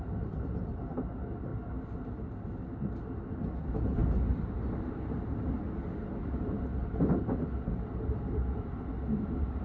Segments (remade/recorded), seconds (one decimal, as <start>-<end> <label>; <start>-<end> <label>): 0.0-1.5 remade; 1.5-3.6 recorded; 3.6-4.0 remade; 4.0-7.7 recorded; 7.7-9.6 remade